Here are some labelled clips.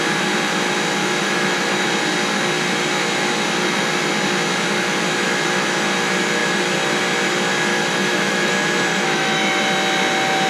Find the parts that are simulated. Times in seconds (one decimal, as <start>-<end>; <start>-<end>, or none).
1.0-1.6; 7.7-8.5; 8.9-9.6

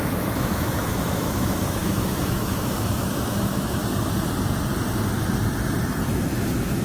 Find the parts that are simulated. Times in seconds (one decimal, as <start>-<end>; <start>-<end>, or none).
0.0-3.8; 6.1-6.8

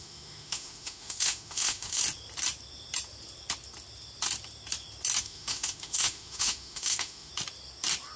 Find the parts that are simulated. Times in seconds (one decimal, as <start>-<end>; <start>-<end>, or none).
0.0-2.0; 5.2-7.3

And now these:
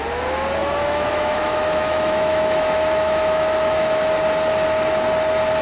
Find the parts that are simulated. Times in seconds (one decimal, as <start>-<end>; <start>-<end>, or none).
0.6-4.0

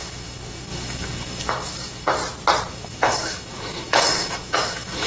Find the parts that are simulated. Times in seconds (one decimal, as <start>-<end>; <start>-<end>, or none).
0.0-2.2; 2.7-5.1

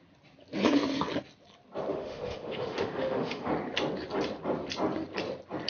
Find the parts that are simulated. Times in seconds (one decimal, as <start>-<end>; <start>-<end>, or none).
1.9-3.5